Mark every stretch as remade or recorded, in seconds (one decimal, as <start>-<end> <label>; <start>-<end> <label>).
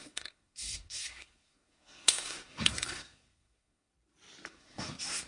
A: 0.0-3.9 remade; 3.9-4.5 recorded; 4.5-5.3 remade